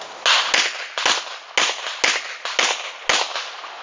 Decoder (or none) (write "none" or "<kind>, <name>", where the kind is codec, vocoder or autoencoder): none